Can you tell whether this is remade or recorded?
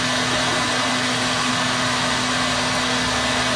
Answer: recorded